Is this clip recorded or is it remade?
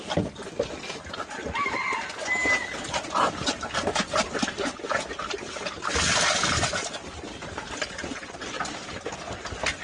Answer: recorded